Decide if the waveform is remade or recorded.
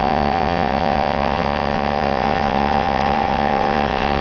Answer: remade